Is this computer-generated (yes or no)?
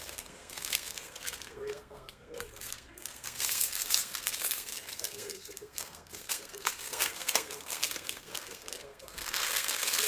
yes